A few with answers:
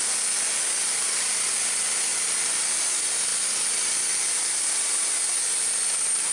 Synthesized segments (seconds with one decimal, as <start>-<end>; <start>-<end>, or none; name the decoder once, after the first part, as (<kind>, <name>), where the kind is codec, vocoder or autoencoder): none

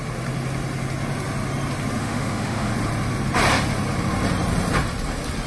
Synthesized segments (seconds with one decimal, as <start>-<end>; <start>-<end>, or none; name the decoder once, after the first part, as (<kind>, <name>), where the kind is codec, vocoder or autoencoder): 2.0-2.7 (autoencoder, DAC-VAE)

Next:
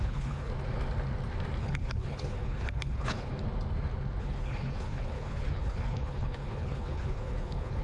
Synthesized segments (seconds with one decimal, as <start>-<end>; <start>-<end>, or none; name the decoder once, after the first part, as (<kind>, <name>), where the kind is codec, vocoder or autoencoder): 0.0-0.5 (codec, HILCodec); 1.6-3.3; 4.2-7.8

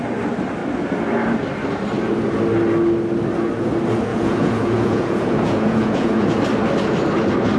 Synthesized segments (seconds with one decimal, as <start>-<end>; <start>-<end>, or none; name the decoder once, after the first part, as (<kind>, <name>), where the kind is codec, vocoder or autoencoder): 4.1-6.4 (vocoder, Vocos)

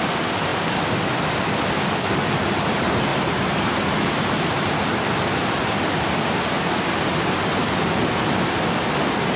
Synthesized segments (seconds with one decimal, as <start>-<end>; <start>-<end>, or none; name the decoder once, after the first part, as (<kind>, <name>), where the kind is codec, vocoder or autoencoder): 3.1-5.0 (vocoder, BigVGAN v2)

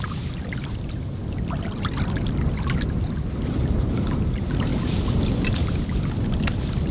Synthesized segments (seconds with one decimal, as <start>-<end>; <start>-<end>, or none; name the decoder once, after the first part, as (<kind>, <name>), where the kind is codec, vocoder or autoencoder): none